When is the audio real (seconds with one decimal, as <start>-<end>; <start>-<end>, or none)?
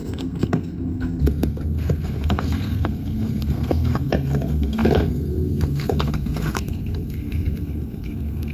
none